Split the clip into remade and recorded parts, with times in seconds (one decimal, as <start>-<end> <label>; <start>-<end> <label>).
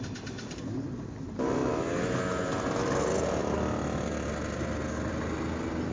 0.0-5.9 recorded